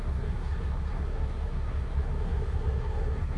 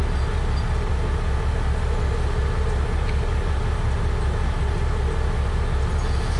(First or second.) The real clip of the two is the second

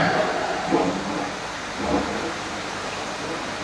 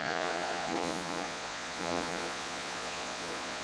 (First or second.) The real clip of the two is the first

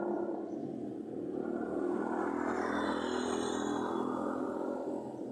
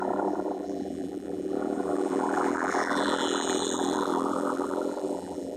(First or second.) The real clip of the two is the first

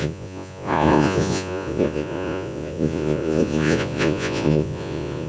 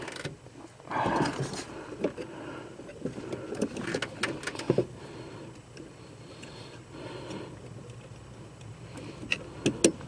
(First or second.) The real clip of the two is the second